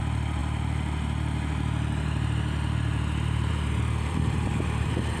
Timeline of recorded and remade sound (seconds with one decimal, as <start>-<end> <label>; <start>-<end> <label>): 0.0-5.2 remade